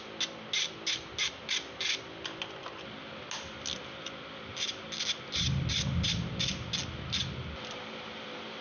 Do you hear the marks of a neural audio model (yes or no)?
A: no